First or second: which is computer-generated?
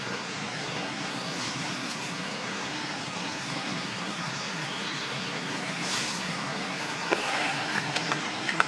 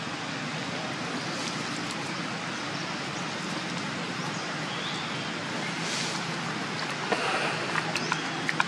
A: first